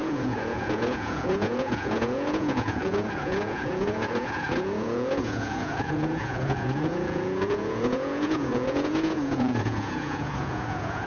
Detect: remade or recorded remade